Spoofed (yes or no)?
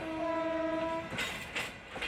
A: no